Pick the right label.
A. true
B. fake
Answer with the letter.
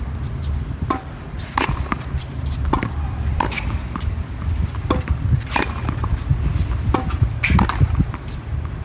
A